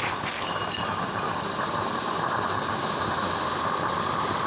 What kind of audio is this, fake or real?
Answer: real